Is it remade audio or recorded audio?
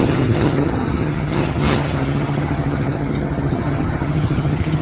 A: remade